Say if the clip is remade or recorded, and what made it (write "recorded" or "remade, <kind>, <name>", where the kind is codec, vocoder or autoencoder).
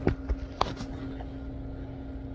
recorded